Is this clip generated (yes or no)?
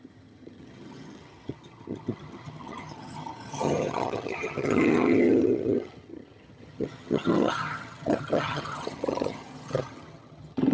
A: yes